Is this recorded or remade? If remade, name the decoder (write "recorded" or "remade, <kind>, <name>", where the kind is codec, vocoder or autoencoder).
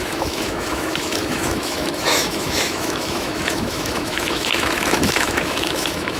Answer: remade, autoencoder, DAC-VAE